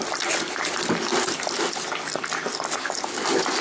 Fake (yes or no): no